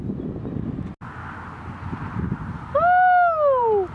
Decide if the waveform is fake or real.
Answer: real